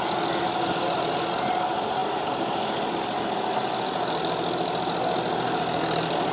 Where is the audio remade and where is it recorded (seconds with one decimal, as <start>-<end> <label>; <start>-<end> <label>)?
0.0-6.3 recorded